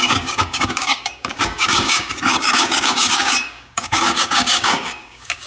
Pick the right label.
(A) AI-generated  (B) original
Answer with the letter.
A